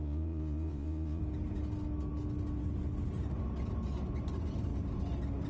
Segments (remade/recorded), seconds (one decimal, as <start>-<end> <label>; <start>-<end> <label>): 0.0-1.2 remade; 1.2-5.5 recorded